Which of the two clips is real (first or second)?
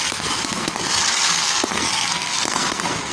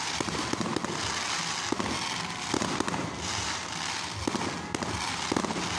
second